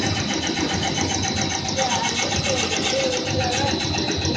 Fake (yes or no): no